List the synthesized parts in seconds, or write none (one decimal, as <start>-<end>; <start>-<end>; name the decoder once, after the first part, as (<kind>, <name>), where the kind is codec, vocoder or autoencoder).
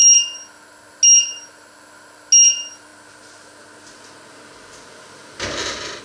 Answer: none